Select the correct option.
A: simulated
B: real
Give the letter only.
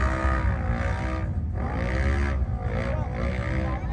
B